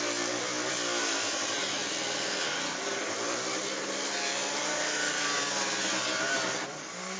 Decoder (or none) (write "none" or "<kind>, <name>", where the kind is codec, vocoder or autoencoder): vocoder, BigVGAN v2